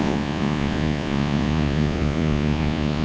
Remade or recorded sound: remade